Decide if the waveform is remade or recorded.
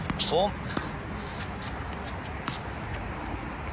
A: recorded